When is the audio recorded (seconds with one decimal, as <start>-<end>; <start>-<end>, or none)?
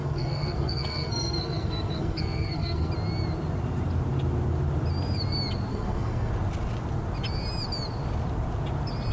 2.9-5.7; 6.3-9.1